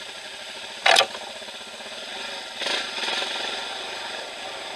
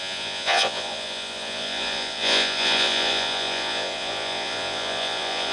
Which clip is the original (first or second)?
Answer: first